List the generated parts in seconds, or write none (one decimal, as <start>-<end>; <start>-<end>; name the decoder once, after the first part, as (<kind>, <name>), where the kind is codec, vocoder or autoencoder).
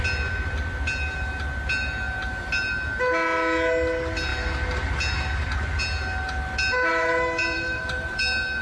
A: 6.9-8.2 (vocoder, BigVGAN v2)